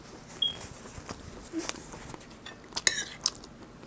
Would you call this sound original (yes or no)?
yes